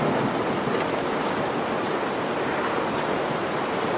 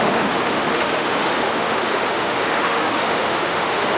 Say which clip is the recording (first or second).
first